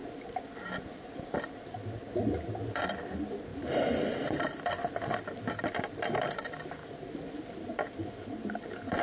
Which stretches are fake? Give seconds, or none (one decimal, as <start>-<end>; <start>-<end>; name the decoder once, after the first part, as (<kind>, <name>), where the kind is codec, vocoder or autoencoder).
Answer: none